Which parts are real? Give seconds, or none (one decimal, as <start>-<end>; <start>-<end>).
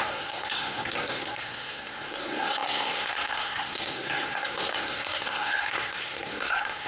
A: none